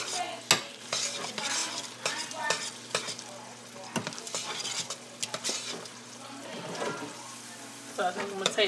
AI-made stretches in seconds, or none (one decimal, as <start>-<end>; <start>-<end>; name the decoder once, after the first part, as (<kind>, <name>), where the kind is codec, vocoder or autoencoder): 6.5-8.7 (vocoder, BigVGAN v2)